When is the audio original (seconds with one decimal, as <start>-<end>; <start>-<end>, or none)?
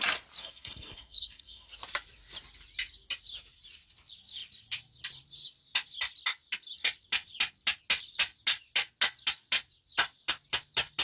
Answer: 0.0-0.4; 1.7-11.0